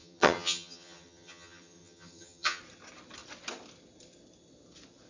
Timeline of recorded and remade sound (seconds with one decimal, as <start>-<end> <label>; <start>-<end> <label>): 0.0-2.6 remade; 2.6-5.1 recorded